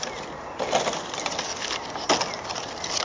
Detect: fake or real real